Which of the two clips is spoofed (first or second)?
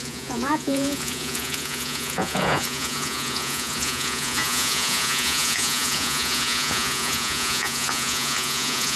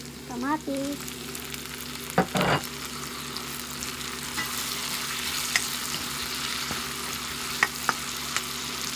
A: first